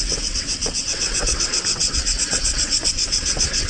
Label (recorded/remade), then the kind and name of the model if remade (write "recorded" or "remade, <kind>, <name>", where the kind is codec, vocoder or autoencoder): remade, vocoder, WaveNeXt